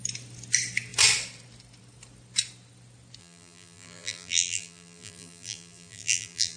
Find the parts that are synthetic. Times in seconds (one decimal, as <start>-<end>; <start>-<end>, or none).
3.2-6.6